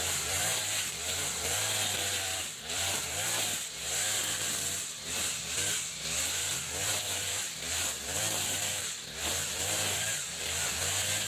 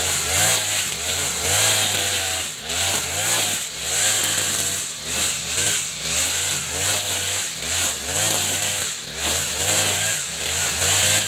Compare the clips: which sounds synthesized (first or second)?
first